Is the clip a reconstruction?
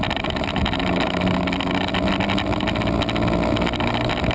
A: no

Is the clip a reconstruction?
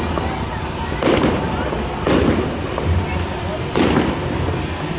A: no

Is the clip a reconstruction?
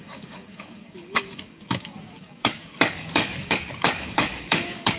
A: yes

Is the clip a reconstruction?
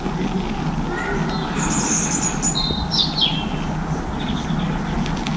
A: no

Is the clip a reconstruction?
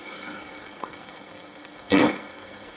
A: yes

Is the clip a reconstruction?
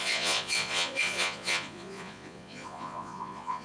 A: yes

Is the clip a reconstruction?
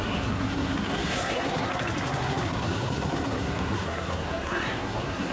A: yes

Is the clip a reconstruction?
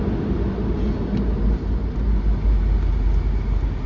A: no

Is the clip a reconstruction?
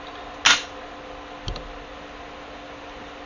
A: no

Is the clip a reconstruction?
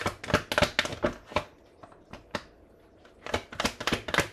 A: no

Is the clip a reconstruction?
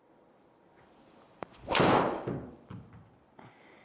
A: yes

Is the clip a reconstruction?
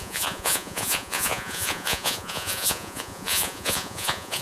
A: yes